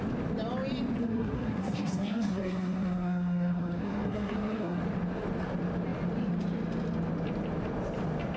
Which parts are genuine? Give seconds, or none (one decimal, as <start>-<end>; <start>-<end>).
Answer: 0.0-1.0; 4.8-8.4